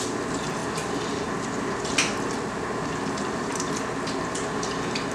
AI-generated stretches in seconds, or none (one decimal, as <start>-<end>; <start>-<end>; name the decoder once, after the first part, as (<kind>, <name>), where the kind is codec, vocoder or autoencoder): none